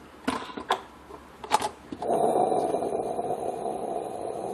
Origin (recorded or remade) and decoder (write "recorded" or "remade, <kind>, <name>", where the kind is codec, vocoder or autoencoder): recorded